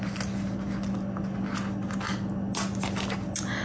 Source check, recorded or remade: recorded